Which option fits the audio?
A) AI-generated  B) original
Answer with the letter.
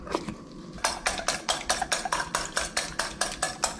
B